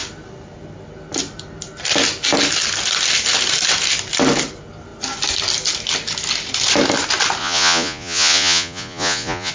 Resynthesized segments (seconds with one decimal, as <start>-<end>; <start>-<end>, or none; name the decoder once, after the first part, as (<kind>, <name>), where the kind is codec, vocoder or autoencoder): 7.4-9.5 (vocoder, Vocos)